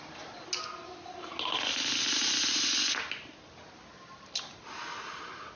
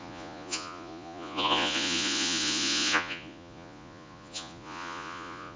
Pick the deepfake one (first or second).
second